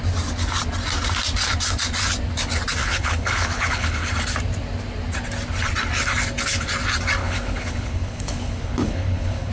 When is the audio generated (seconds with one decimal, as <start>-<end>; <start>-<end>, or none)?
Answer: 2.8-4.1; 7.2-9.5